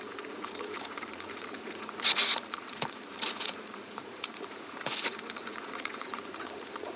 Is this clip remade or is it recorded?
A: remade